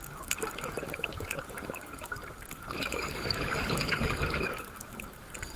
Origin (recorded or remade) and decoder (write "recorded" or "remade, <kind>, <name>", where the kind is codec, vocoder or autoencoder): remade, codec, DAC